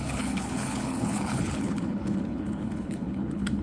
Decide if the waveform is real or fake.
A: fake